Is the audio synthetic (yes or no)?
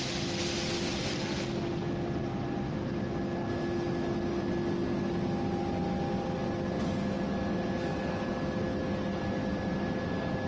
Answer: no